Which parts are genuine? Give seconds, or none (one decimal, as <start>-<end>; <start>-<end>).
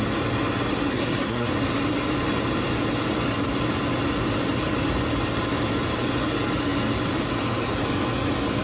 0.0-0.9; 1.5-8.6